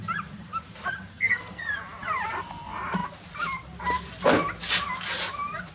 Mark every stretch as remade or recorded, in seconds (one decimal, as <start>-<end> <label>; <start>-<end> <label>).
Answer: 0.0-1.1 recorded; 1.1-1.6 remade; 1.6-5.7 recorded